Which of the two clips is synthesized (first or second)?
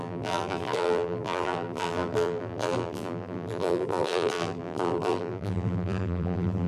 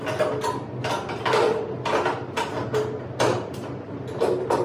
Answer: first